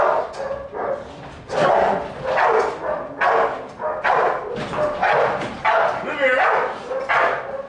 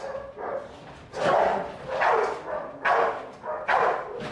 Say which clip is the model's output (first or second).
second